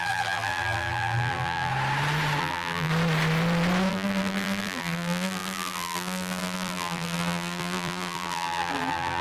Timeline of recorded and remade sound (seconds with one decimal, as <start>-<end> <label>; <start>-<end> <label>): 0.0-1.7 remade; 1.7-2.4 recorded; 2.4-2.9 remade; 2.9-3.9 recorded; 3.9-9.2 remade